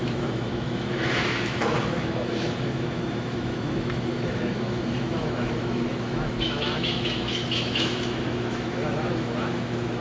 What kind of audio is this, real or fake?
fake